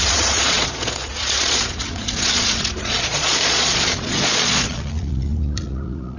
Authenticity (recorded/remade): remade